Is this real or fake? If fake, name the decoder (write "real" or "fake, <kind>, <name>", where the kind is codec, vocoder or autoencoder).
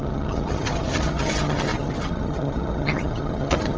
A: fake, vocoder, HiFi-GAN